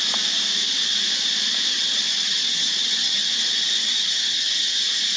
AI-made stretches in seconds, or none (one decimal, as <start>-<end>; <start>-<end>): 1.7-4.8